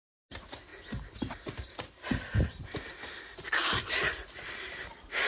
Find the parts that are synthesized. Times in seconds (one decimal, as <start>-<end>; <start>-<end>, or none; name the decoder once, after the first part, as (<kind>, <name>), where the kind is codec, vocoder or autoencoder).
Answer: none